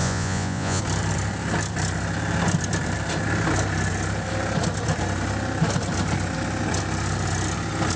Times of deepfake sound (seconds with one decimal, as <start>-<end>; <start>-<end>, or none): 0.0-0.8